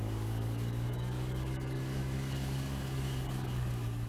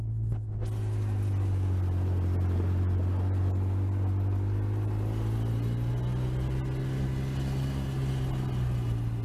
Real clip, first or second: second